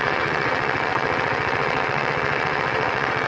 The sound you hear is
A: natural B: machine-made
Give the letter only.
B